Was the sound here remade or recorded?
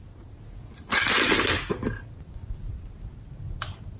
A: recorded